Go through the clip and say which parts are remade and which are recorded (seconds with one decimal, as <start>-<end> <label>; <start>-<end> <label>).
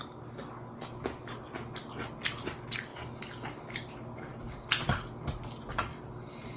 0.0-6.6 recorded